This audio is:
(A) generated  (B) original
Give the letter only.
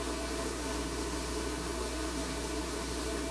A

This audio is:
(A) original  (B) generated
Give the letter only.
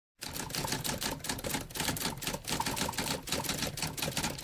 A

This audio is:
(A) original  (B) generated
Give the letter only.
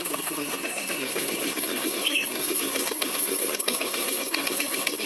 B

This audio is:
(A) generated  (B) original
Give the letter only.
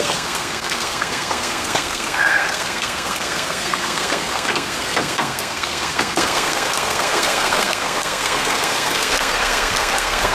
A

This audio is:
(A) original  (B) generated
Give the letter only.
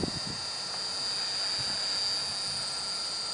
A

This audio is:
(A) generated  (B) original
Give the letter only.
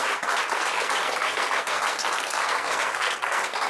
A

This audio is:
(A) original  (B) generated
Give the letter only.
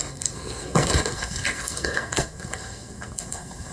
B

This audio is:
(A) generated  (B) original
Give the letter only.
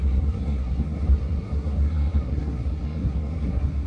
A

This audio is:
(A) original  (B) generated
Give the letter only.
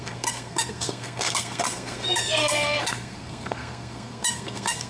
B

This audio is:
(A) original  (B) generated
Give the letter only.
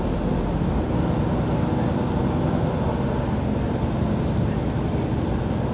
A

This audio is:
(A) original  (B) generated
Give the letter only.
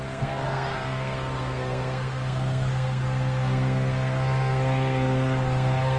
B